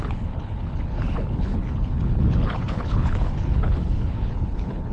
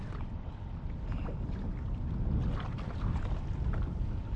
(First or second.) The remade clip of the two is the first